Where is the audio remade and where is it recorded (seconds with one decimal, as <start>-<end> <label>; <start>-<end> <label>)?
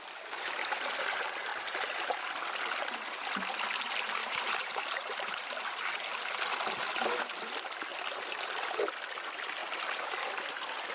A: 0.0-4.2 recorded; 4.2-6.5 remade; 6.5-10.9 recorded